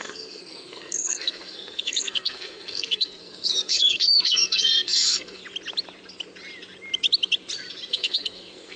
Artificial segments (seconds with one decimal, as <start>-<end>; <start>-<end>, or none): 0.0-5.4; 7.9-8.8